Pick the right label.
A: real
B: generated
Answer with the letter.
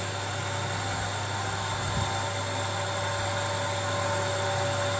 A